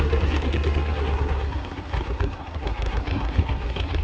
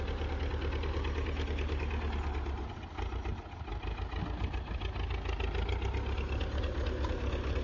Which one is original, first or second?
second